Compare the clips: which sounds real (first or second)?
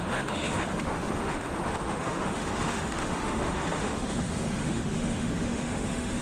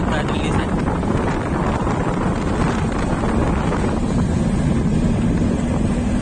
second